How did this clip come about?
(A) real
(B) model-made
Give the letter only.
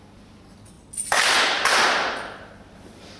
A